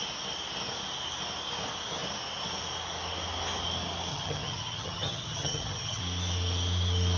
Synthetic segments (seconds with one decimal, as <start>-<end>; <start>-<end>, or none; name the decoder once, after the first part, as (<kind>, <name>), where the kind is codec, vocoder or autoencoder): 4.1-6.0 (vocoder, HiFi-GAN)